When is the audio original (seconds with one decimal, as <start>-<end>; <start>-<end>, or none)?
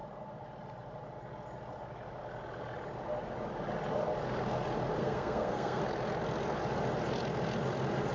0.0-5.0; 5.8-8.1